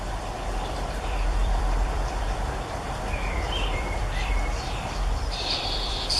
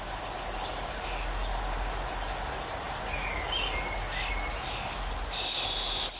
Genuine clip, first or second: second